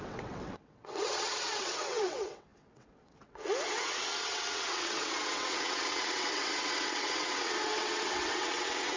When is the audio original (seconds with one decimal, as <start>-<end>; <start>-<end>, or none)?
none